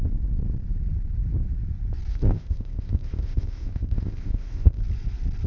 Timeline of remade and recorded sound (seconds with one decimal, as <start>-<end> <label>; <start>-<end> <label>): 0.0-2.1 recorded; 2.1-4.8 remade; 4.8-5.5 recorded